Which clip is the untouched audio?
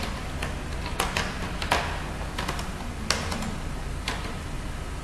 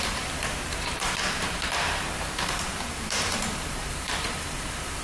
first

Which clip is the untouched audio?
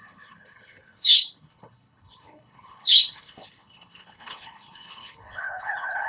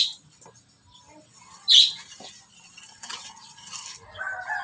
second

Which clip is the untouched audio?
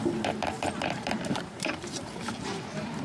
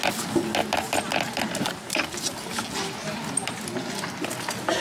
second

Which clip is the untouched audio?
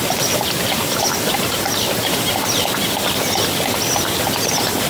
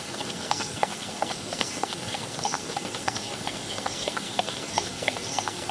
first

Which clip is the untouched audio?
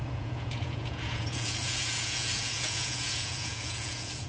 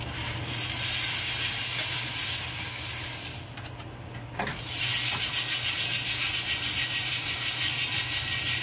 second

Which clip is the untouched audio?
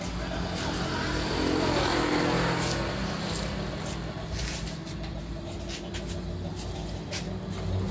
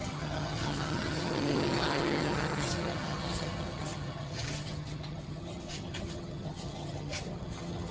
first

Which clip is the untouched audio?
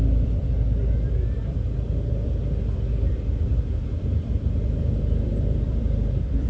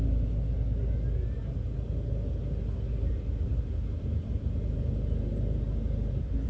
second